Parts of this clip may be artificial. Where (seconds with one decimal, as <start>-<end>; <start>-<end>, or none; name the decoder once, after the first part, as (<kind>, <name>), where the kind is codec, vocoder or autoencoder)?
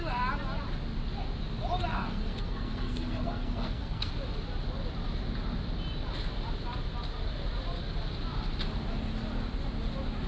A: 1.9-4.1 (codec, SNAC)